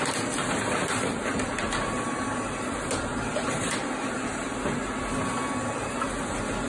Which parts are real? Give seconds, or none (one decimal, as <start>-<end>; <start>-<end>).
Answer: 0.0-0.4; 4.4-6.7